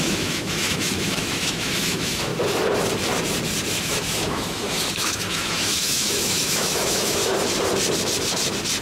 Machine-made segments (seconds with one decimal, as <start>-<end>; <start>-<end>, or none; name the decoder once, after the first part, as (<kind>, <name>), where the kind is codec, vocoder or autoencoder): 0.0-2.3 (autoencoder, DAC-VAE); 3.8-7.2